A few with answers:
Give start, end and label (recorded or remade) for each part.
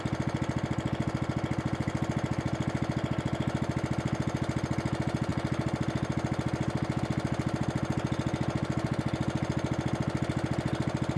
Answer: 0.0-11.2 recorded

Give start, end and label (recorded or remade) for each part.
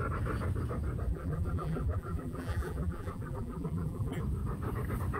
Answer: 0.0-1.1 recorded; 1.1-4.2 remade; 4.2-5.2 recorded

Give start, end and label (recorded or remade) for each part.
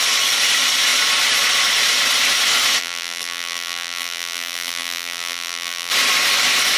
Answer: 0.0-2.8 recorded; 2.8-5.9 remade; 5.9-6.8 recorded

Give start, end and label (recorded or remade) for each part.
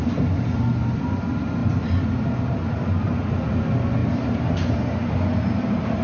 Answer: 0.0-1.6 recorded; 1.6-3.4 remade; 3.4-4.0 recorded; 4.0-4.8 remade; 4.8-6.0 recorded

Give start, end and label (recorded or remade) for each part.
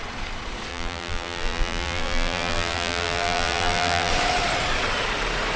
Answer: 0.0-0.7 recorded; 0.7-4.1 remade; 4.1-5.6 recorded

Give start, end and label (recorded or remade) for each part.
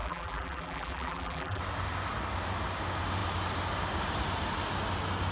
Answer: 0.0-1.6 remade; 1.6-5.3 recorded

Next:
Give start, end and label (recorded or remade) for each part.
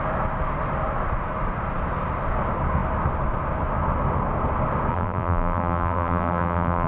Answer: 0.0-4.9 recorded; 4.9-6.9 remade